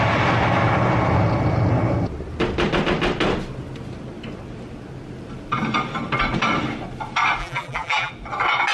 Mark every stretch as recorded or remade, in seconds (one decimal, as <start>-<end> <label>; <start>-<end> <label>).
0.0-7.4 recorded; 7.4-8.1 remade; 8.1-8.7 recorded